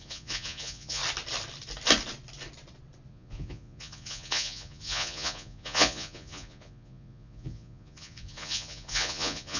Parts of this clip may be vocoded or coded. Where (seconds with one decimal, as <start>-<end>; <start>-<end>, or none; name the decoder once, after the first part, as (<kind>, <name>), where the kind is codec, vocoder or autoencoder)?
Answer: 0.0-1.0 (vocoder, Vocos); 3.1-9.6